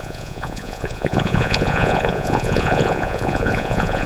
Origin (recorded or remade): remade